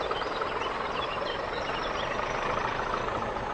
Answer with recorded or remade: recorded